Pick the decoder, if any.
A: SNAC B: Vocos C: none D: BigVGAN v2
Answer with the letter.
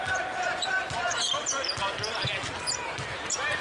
C